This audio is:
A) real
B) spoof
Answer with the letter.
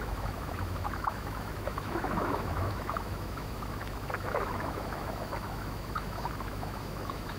B